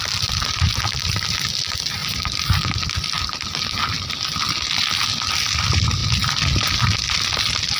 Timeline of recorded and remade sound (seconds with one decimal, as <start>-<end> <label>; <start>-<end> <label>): 0.0-7.8 recorded